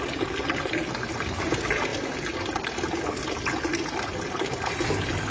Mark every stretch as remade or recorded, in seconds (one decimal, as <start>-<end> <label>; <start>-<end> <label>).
0.0-5.3 recorded